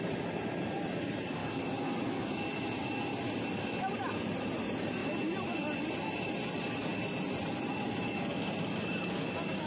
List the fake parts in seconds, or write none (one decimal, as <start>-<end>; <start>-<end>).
0.0-1.4; 3.4-5.0; 6.3-6.9